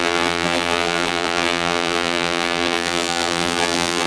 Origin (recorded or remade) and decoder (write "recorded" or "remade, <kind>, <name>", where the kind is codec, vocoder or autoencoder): remade, vocoder, BigVGAN v2